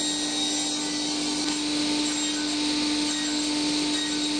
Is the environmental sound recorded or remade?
recorded